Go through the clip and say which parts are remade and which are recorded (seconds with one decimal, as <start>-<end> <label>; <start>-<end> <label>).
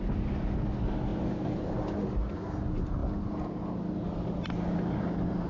0.0-5.5 recorded